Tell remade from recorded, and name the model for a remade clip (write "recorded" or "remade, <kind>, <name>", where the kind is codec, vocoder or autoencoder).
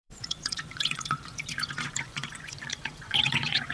remade, vocoder, Vocos